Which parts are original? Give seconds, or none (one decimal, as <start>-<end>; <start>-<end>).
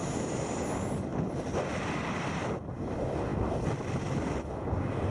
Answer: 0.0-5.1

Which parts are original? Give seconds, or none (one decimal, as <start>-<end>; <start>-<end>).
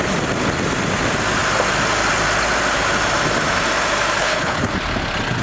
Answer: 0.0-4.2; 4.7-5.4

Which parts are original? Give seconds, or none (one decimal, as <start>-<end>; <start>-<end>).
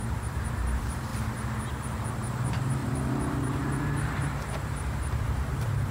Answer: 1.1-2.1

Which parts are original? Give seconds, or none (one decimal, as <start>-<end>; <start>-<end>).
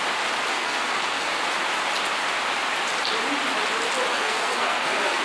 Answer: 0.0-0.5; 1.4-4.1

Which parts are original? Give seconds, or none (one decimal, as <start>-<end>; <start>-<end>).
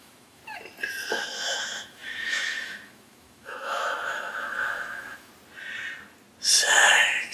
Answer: 0.4-1.1; 5.3-7.3